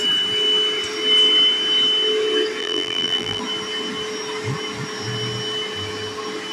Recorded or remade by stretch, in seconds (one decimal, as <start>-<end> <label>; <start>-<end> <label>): 0.0-2.6 recorded; 2.6-3.4 remade; 3.4-6.5 recorded